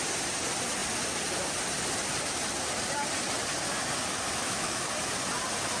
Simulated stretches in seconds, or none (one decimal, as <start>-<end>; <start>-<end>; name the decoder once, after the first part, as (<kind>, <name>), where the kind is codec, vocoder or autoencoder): 4.4-4.9 (autoencoder, DAC-VAE)

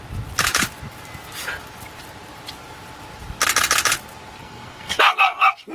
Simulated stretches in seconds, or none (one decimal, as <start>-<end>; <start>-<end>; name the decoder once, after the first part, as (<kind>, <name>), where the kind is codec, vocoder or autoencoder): 4.4-5.7 (codec, SNAC)

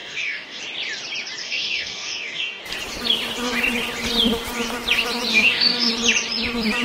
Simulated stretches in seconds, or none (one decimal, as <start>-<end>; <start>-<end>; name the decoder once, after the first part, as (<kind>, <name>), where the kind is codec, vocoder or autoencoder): 0.0-0.6 (codec, DAC); 1.4-2.6; 5.3-5.9

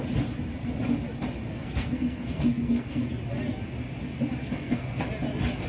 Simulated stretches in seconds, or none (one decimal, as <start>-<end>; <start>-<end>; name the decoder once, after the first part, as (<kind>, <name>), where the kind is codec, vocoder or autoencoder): 1.5-3.1 (codec, SNAC); 4.4-5.1

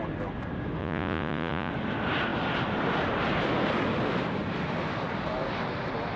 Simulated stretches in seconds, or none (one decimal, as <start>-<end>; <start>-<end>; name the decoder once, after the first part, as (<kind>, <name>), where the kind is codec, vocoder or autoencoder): 0.8-1.7 (vocoder, Vocos)

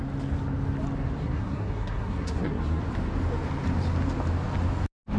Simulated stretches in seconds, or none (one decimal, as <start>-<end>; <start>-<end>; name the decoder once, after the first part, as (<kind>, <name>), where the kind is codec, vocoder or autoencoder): 1.2-2.8 (codec, SNAC)

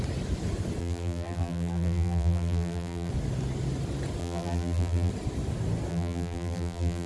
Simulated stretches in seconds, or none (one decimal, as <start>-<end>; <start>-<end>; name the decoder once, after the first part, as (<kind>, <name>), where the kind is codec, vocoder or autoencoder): 0.8-3.1 (vocoder, BigVGAN v2); 4.2-5.1; 5.9-7.1